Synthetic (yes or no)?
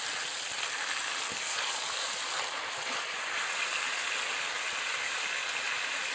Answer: no